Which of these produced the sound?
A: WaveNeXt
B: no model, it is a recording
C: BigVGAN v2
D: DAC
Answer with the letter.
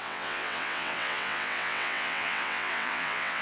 A